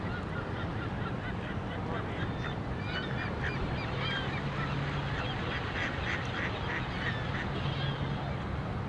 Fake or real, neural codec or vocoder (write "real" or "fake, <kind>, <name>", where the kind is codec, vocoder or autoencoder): real